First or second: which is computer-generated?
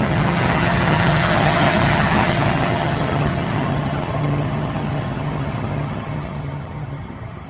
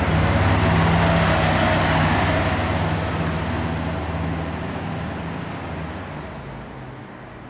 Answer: first